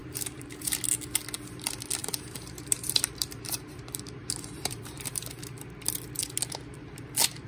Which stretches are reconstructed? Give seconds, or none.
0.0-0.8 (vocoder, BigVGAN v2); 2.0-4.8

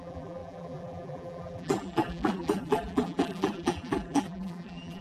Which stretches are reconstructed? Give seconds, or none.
0.0-5.0 (vocoder, BigVGAN v2)

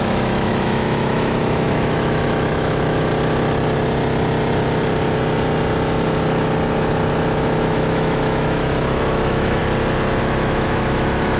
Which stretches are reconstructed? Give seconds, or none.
0.0-3.1 (autoencoder, DAC-VAE); 7.6-9.6; 10.2-11.4